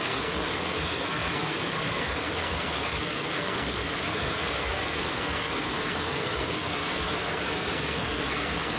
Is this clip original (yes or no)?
no